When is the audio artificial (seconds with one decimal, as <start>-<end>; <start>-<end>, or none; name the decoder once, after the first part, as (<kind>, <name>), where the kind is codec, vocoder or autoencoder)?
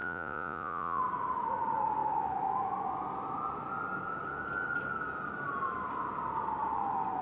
0.0-1.0 (vocoder, Vocos)